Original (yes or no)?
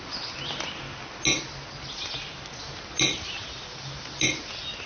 yes